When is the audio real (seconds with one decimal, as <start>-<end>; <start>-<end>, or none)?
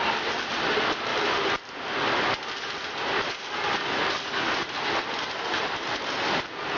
0.0-6.8